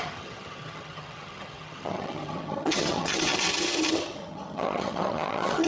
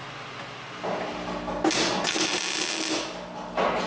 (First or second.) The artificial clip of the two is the first